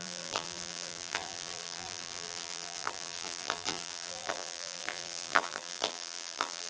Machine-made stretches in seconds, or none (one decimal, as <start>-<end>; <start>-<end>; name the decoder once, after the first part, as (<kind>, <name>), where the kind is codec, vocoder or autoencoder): 0.0-6.7 (vocoder, BigVGAN v2)